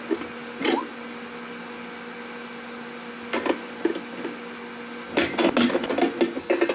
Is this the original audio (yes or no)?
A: yes